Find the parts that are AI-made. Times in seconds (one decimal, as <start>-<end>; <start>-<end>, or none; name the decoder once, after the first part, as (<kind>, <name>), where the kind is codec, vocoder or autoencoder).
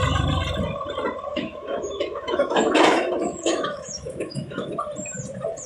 1.3-4.7 (autoencoder, DAC-VAE)